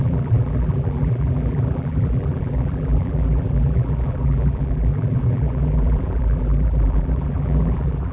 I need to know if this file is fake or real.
fake